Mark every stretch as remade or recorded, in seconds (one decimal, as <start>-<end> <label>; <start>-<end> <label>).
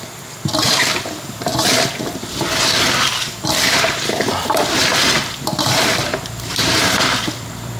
0.0-1.5 remade; 1.5-2.3 recorded; 2.3-7.8 remade